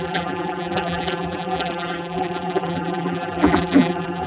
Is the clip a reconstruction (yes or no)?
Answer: yes